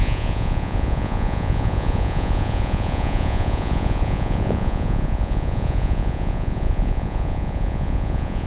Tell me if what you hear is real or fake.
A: fake